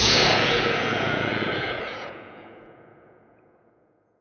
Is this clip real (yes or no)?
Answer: no